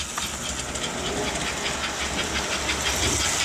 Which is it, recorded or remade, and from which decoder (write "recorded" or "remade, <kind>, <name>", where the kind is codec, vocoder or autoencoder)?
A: recorded